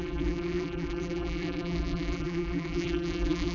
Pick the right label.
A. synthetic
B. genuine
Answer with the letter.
A